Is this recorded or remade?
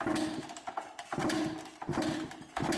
recorded